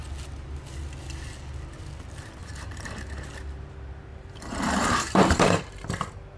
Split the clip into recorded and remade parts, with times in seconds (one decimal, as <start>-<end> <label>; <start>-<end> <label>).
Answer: 0.0-2.4 recorded; 2.4-3.2 remade; 3.2-4.1 recorded; 4.1-5.6 remade; 5.6-6.4 recorded